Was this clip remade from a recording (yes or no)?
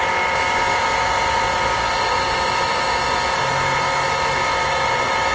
no